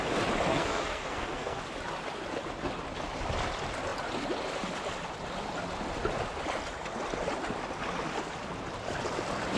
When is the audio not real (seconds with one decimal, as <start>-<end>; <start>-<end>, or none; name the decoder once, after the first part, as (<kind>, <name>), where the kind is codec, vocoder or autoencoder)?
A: 0.5-1.6 (codec, SNAC)